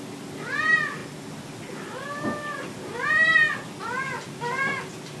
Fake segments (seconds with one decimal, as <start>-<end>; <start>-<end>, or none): none